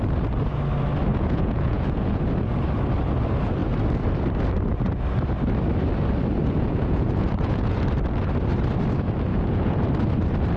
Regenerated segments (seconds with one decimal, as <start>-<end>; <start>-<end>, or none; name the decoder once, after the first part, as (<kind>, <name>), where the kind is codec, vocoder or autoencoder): 1.1-2.2 (vocoder, Vocos); 6.4-7.8; 9.3-9.8